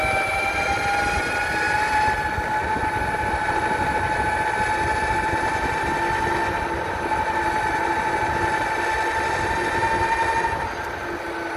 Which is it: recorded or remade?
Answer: recorded